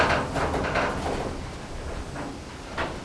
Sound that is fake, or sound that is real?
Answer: real